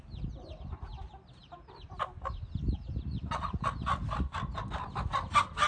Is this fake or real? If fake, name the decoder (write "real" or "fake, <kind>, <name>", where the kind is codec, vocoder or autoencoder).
real